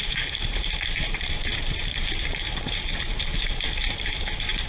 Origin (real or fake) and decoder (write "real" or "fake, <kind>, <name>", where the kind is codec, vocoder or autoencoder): fake, vocoder, BigVGAN v2